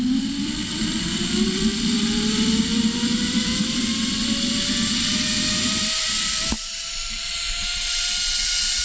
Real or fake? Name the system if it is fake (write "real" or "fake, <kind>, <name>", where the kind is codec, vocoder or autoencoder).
fake, vocoder, BigVGAN v2